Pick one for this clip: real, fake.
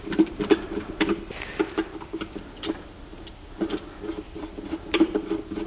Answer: fake